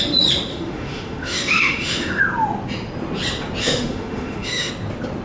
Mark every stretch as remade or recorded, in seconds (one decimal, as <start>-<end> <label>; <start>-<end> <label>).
0.0-0.5 recorded; 0.5-2.2 remade; 2.2-3.6 recorded; 3.6-4.7 remade; 4.7-5.2 recorded